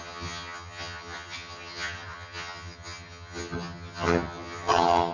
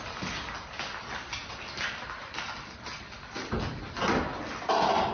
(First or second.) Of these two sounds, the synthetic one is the first